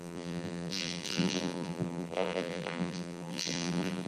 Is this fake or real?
fake